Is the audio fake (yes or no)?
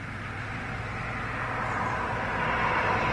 no